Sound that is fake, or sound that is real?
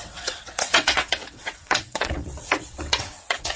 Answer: fake